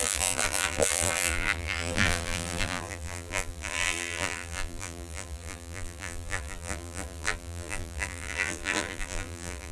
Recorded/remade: remade